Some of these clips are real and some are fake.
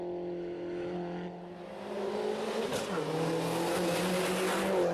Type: real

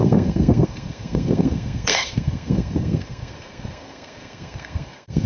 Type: fake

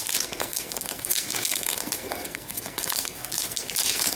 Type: fake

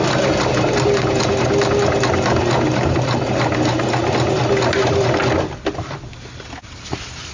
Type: real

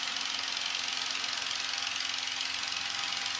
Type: real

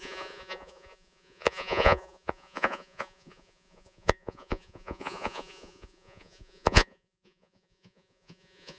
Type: fake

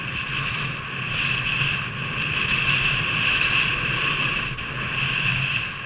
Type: real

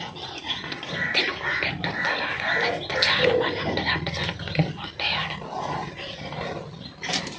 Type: real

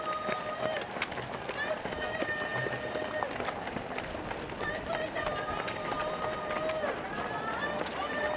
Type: real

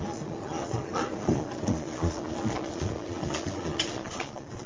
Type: fake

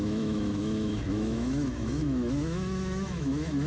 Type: fake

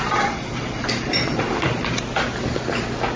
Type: real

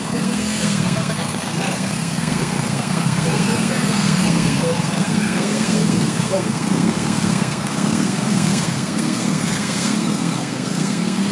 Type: fake